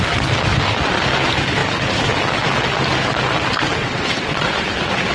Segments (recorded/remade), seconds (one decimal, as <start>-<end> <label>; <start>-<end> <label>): 0.0-3.8 recorded; 3.8-4.5 remade; 4.5-5.1 recorded